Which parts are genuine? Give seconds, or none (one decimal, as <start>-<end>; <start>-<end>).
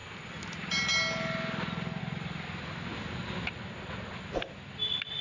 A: 0.0-5.2